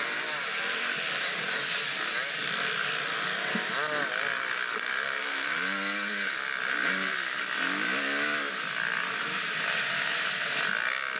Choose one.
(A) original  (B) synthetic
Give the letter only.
A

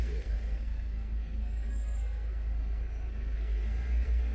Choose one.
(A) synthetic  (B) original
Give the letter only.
A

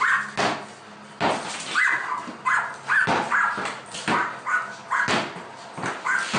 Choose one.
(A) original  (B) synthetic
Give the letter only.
A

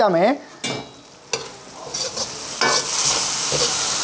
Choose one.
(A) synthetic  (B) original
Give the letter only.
B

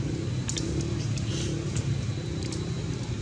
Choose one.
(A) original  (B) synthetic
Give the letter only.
A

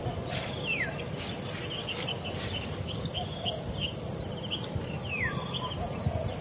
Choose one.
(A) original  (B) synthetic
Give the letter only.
A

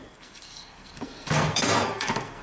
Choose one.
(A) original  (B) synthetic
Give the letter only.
B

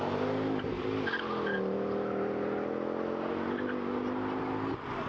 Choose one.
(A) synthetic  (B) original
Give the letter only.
B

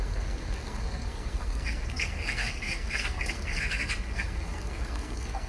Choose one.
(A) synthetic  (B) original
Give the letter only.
A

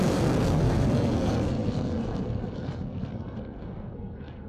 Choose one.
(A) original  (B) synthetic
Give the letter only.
B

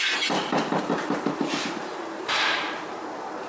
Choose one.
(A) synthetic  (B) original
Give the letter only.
A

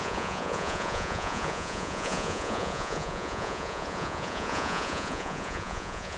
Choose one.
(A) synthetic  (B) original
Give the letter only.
A